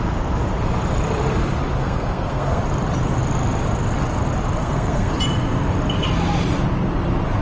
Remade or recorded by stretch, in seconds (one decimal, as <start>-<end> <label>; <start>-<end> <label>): 0.0-1.8 recorded; 1.8-2.6 remade; 2.6-4.6 recorded; 4.6-5.1 remade; 5.1-7.4 recorded